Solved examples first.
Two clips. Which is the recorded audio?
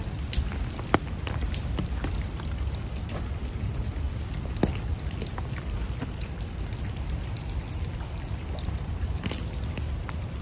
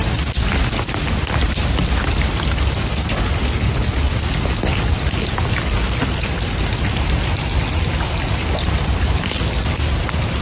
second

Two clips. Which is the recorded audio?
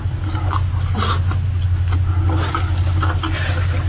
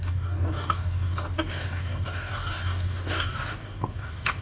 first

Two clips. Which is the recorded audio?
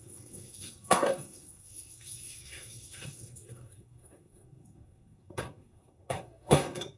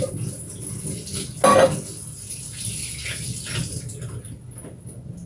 second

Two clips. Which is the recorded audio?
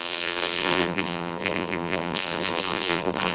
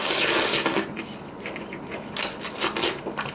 second